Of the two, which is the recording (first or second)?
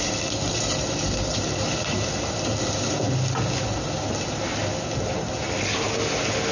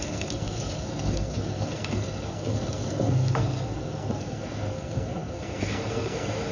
first